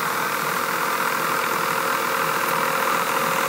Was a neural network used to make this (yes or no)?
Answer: no